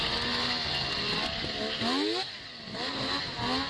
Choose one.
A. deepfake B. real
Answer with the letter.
B